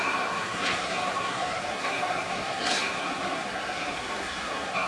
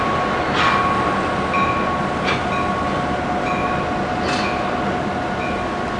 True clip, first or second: second